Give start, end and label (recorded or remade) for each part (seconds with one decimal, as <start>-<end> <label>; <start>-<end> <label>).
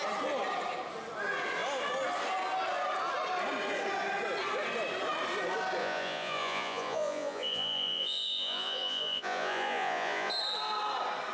0.0-5.8 recorded; 5.8-10.3 remade; 10.3-11.3 recorded